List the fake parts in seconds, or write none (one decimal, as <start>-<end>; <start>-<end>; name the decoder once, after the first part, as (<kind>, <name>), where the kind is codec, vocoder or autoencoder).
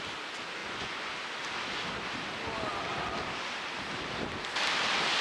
0.6-1.1 (vocoder, Vocos)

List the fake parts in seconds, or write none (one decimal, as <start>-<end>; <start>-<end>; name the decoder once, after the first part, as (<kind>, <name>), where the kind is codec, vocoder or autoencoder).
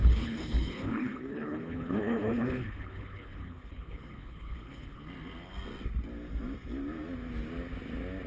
0.0-5.0 (codec, HILCodec)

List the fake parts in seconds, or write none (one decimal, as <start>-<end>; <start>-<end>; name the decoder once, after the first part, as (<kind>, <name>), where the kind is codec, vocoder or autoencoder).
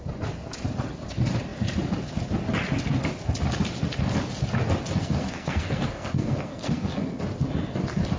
5.0-7.2 (codec, SNAC)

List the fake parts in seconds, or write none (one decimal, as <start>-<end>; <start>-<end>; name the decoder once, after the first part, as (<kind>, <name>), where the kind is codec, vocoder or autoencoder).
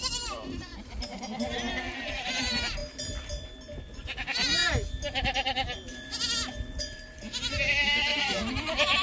0.0-4.6 (vocoder, BigVGAN v2); 6.8-9.0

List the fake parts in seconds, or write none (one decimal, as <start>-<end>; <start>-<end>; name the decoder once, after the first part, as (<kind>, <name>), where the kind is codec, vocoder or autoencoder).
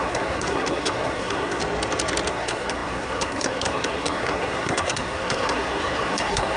0.0-1.6 (codec, SNAC); 2.3-6.6